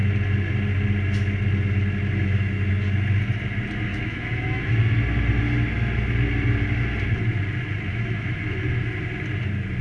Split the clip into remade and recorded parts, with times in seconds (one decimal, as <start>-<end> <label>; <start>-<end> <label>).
0.0-3.9 recorded; 3.9-4.6 remade; 4.6-7.9 recorded; 7.9-8.4 remade; 8.4-9.8 recorded